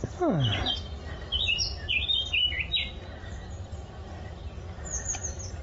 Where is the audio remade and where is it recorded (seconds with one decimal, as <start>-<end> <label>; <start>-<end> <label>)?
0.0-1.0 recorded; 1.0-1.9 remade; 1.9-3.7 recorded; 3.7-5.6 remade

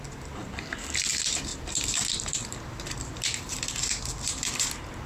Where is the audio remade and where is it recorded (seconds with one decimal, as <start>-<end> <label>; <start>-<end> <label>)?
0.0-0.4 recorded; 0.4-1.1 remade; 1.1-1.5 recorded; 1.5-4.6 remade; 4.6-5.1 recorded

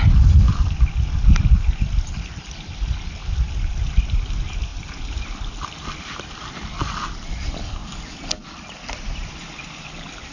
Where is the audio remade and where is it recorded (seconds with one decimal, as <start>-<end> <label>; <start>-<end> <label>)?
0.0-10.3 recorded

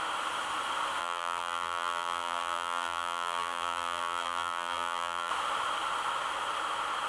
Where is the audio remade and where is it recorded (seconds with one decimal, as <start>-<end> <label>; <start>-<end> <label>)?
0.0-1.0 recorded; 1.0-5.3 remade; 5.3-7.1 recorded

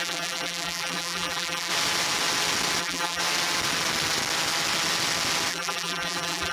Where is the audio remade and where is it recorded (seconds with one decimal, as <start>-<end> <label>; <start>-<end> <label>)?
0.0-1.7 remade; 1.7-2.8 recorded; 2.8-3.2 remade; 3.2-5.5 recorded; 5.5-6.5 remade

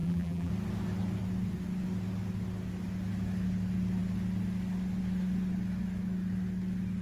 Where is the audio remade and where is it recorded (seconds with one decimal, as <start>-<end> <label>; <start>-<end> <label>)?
0.0-0.5 remade; 0.5-7.0 recorded

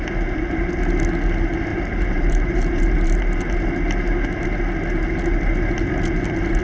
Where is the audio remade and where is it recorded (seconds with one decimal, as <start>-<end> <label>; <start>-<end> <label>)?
0.0-1.7 recorded; 1.7-3.6 remade; 3.6-6.6 recorded